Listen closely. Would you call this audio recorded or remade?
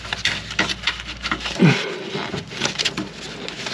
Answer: recorded